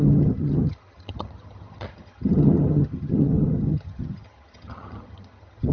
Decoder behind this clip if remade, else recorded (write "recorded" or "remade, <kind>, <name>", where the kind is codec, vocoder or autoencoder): remade, vocoder, HiFi-GAN